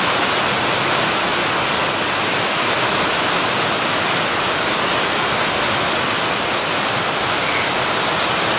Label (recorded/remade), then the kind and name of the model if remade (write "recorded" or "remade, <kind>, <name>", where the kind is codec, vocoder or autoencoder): recorded